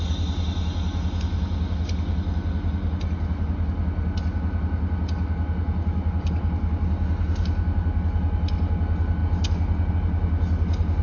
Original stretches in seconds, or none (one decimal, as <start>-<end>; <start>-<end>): 0.0-11.0